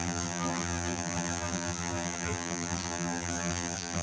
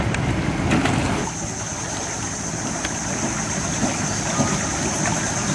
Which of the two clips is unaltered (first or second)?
second